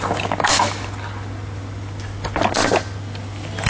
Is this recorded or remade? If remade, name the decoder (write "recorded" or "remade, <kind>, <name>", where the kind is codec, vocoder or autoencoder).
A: recorded